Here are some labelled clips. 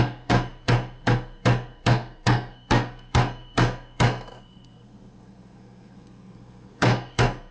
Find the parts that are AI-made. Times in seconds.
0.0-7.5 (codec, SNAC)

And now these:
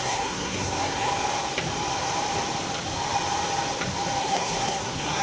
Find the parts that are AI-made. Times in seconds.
0.0-1.1 (codec, SNAC); 4.2-5.2

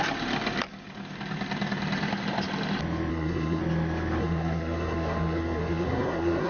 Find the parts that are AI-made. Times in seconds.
3.1-3.6 (codec, SNAC); 4.2-6.5

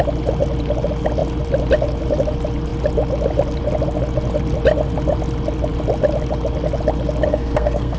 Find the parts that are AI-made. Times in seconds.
7.3-8.0 (codec, SNAC)

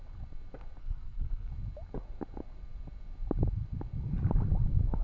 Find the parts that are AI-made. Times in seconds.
0.8-1.5 (codec, SNAC)

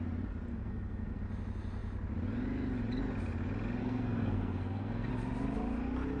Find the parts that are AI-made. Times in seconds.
0.5-1.2 (codec, SNAC); 3.8-5.1